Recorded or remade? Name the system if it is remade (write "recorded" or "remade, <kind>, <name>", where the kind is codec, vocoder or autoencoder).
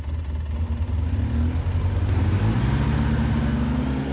recorded